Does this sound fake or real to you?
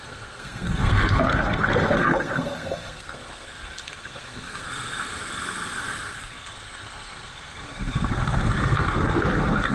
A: fake